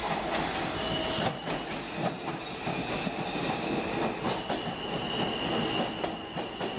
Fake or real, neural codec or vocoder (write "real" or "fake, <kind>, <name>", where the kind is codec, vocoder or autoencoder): real